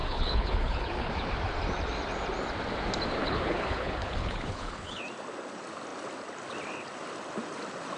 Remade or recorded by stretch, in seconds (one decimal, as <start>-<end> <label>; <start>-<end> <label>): 0.0-1.1 remade; 1.1-3.2 recorded; 3.2-5.0 remade; 5.0-8.0 recorded